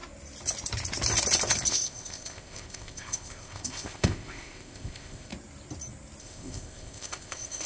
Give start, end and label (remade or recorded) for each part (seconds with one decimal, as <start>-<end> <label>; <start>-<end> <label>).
0.0-1.7 recorded; 1.7-5.3 remade; 5.3-6.2 recorded; 6.2-7.7 remade

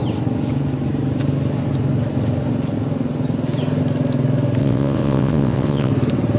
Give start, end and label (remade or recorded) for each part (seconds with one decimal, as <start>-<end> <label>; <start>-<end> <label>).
0.0-4.6 recorded; 4.6-5.9 remade; 5.9-6.4 recorded